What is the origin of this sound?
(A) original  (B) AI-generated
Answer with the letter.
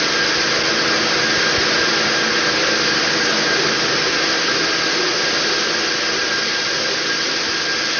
A